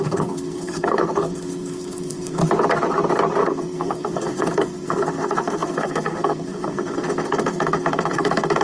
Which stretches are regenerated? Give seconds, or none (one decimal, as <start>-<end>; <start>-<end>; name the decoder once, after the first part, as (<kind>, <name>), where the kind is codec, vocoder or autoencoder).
0.0-2.4 (codec, SNAC); 3.4-8.6